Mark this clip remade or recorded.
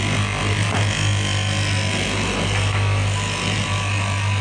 recorded